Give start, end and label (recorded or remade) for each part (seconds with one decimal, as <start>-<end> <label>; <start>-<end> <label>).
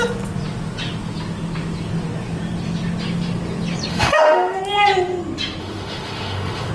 0.0-3.9 recorded; 3.9-4.6 remade; 4.6-5.6 recorded; 5.6-6.7 remade